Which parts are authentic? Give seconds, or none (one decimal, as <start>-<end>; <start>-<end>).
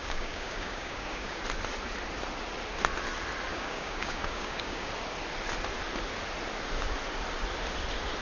1.4-3.5; 4.9-8.2